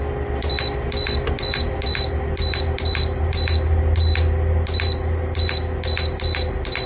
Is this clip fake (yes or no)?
no